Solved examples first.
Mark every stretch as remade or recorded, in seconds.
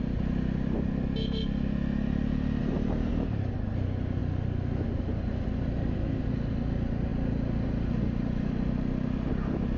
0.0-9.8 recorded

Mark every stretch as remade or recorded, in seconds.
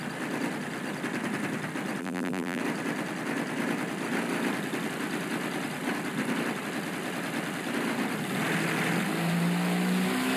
0.0-2.0 recorded; 2.0-2.6 remade; 2.6-10.4 recorded